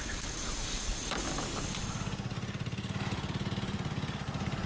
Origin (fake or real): real